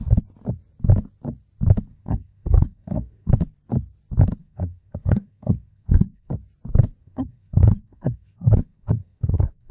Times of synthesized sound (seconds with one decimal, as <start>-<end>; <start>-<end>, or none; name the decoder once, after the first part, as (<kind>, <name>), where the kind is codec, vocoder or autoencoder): 1.9-3.3 (codec, SNAC); 4.4-6.3; 7.0-9.7